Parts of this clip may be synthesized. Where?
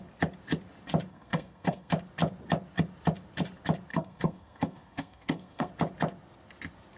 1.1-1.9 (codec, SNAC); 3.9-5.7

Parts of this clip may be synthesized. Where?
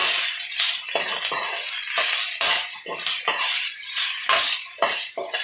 3.2-5.4 (vocoder, BigVGAN v2)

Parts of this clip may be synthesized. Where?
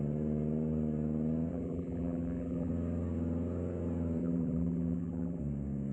1.5-2.7 (vocoder, BigVGAN v2); 4.2-5.4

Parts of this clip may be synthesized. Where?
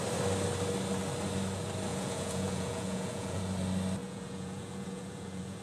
1.9-3.4 (vocoder, Vocos); 4.0-5.6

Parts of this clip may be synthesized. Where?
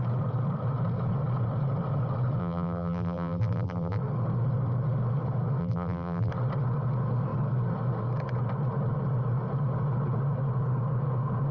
2.4-4.0 (vocoder, BigVGAN v2); 5.6-6.3